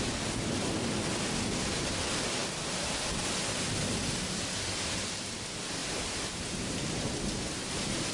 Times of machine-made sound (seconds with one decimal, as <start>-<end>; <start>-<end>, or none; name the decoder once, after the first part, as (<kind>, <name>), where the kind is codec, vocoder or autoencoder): 5.8-8.1 (vocoder, BigVGAN v2)